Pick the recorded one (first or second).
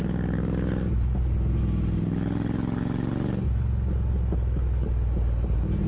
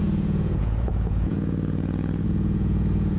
first